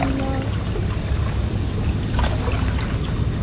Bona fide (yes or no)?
yes